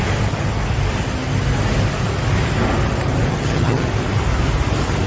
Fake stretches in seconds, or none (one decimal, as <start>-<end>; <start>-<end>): 3.3-3.9